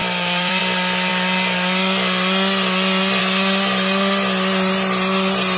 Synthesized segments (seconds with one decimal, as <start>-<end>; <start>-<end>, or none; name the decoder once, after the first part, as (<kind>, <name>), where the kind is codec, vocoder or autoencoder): 0.0-0.6 (vocoder, BigVGAN v2)